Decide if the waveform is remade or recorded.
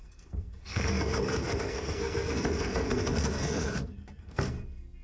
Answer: remade